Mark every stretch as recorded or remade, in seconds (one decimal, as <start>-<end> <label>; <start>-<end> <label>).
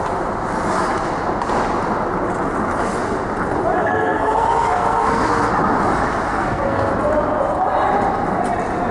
0.0-3.8 recorded; 3.8-5.5 remade; 5.5-6.3 recorded; 6.3-6.9 remade; 6.9-8.9 recorded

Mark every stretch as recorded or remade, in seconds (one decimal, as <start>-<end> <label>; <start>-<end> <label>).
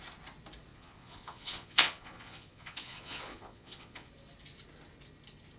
0.0-0.7 recorded; 0.7-4.1 remade; 4.1-5.6 recorded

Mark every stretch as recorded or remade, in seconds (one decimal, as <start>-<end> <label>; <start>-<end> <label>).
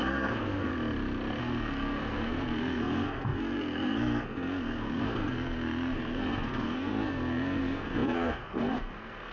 0.0-0.7 remade; 0.7-1.4 recorded; 1.4-9.3 remade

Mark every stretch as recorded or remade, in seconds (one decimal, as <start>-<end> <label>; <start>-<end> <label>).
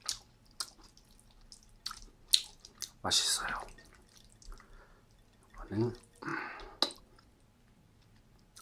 0.0-8.6 recorded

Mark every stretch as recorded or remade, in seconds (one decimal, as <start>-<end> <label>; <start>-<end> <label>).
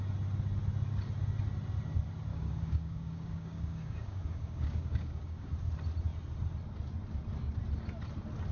0.0-2.3 recorded; 2.3-5.5 remade; 5.5-8.5 recorded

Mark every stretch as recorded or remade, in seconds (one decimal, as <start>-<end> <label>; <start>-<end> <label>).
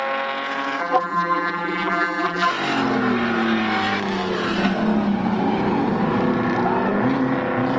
0.0-0.8 recorded; 0.8-2.5 remade; 2.5-7.8 recorded